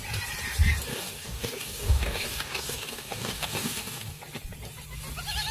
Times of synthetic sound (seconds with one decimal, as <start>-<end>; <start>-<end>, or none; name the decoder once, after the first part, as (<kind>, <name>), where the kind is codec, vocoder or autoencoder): 0.9-4.2 (codec, DAC)